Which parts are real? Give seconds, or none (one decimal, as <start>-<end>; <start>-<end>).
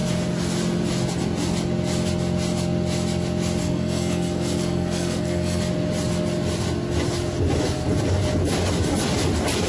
0.0-3.6; 5.7-9.7